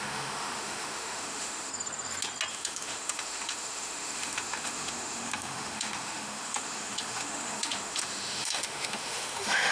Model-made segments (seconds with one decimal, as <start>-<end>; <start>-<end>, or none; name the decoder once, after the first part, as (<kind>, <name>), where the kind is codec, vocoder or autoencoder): 0.0-1.7 (autoencoder, DAC-VAE); 2.5-9.7